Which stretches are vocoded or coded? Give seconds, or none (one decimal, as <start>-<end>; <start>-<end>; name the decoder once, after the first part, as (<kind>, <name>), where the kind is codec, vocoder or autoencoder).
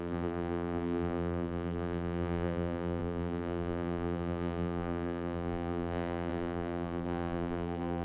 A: 0.0-8.0 (vocoder, BigVGAN v2)